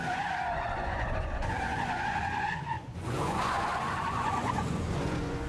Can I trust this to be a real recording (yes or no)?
no